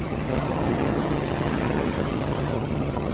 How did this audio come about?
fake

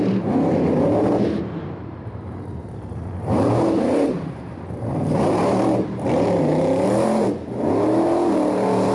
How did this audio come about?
fake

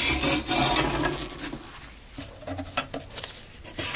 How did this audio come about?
real